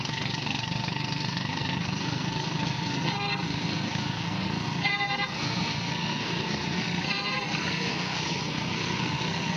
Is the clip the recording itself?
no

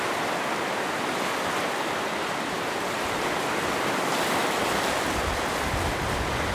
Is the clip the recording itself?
no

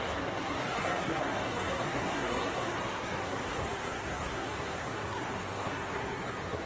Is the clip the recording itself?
no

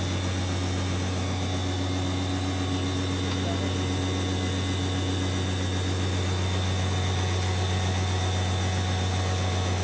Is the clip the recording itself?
yes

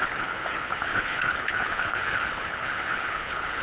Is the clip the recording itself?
no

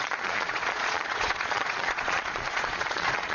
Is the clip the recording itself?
no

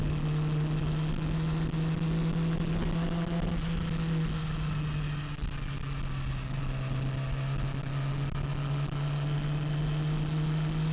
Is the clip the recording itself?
yes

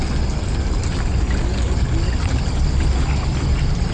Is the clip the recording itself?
yes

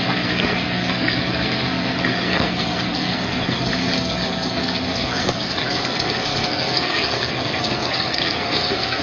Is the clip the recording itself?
no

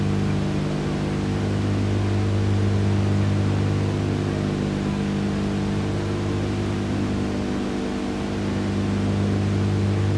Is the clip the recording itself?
yes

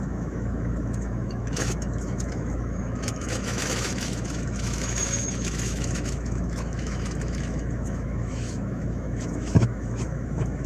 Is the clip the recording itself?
no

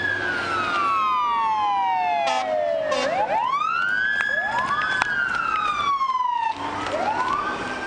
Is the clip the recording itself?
yes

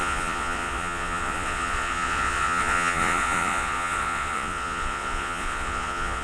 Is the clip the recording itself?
no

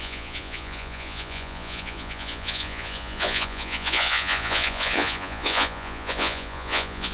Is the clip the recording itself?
no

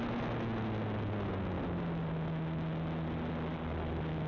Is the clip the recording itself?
yes